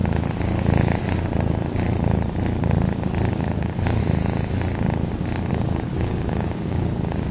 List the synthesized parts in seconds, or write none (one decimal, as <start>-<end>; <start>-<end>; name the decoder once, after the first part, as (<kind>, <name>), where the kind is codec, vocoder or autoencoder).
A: 3.3-4.0 (codec, DAC); 5.5-7.3